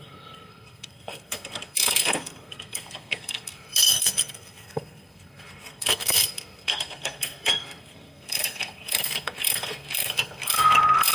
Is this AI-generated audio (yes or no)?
yes